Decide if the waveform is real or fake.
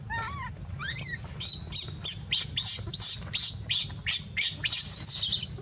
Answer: real